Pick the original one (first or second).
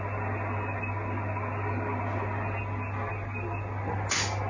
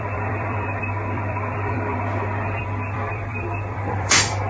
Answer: first